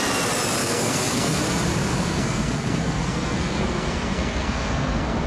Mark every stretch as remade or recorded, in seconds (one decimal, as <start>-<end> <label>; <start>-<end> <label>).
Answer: 0.0-0.6 recorded; 0.6-1.4 remade; 1.4-1.9 recorded; 1.9-5.3 remade